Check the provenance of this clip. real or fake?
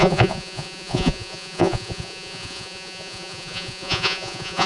fake